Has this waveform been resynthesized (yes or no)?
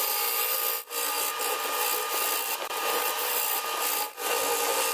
no